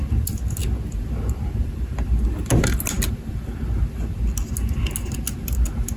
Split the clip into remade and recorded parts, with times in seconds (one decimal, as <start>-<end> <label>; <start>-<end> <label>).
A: 0.0-6.0 recorded